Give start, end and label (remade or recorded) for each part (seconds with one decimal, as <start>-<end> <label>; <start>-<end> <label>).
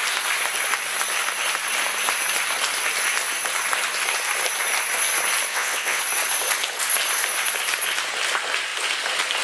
0.0-5.5 recorded; 5.5-6.0 remade; 6.0-9.4 recorded